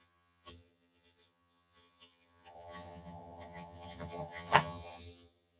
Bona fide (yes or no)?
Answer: no